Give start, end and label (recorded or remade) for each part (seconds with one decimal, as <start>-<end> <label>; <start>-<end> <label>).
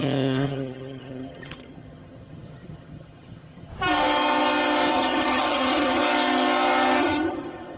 0.0-3.7 remade; 3.7-4.9 recorded; 4.9-6.0 remade; 6.0-7.0 recorded; 7.0-7.8 remade